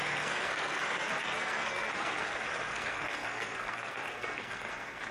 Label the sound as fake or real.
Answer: fake